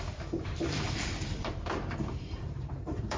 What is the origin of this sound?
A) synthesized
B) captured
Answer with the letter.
A